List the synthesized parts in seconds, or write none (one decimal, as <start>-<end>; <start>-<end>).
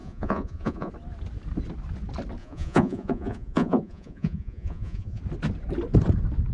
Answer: 0.0-0.9; 2.4-5.2